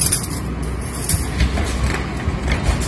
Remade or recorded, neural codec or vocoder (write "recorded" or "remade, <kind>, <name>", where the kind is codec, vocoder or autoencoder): recorded